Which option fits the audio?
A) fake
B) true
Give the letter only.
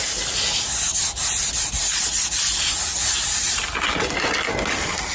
B